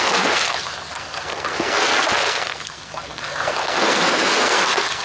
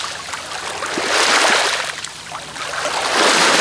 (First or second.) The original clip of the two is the second